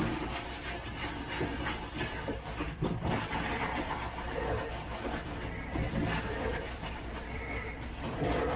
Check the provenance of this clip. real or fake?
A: fake